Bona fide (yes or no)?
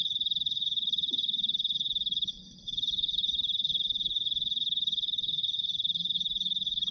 no